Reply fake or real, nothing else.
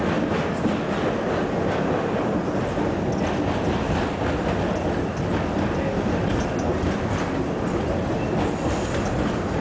real